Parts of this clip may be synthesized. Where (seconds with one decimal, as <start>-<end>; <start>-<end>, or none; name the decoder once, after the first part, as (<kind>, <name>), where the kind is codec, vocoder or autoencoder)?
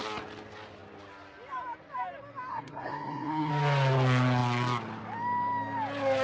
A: 2.5-3.5 (codec, SNAC)